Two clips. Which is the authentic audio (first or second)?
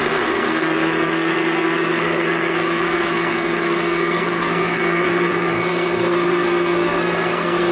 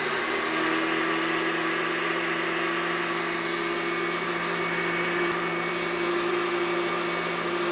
second